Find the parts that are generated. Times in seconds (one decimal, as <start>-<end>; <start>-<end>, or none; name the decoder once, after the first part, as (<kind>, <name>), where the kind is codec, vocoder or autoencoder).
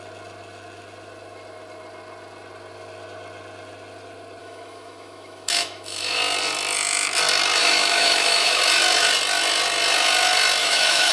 4.4-6.2 (autoencoder, DAC-VAE); 7.6-8.6; 10.6-11.1